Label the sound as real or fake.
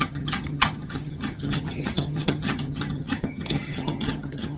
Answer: fake